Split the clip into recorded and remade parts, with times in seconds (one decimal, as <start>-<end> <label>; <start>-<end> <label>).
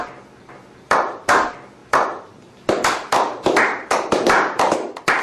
0.0-0.6 recorded; 0.6-1.3 remade; 1.3-1.8 recorded; 1.8-5.2 remade